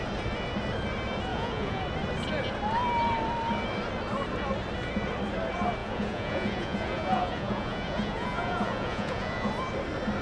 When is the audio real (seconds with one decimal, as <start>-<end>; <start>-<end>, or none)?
0.0-1.3; 1.8-5.8; 9.5-10.2